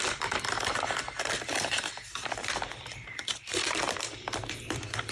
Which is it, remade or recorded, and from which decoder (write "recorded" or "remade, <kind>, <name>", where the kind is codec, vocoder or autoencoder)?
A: remade, vocoder, BigVGAN v2